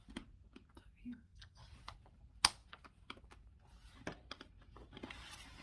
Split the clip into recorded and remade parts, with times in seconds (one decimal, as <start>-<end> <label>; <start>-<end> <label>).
0.0-1.0 recorded; 1.0-1.6 remade; 1.6-5.6 recorded